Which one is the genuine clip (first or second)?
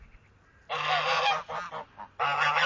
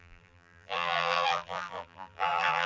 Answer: first